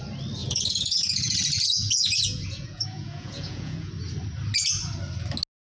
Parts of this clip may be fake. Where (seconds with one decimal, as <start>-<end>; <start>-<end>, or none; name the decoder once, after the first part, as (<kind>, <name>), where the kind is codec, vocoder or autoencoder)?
0.4-3.9 (vocoder, Vocos)